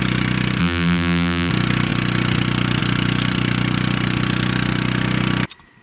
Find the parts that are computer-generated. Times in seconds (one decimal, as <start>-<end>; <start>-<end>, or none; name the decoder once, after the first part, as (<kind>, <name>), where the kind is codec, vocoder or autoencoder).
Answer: 0.6-1.5 (vocoder, BigVGAN v2)